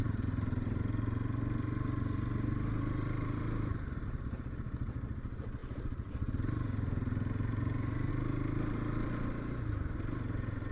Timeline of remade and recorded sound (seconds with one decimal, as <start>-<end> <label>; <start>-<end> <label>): 0.0-0.8 remade; 0.8-5.6 recorded; 5.6-8.1 remade; 8.1-10.7 recorded